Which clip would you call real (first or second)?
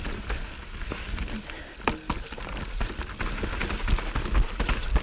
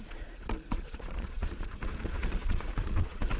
first